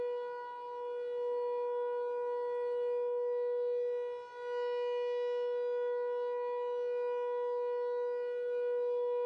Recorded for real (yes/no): yes